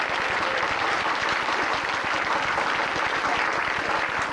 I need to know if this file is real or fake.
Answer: real